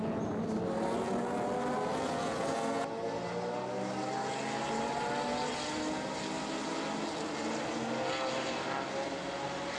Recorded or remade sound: recorded